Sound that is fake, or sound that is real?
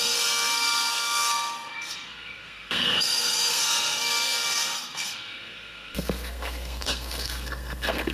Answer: fake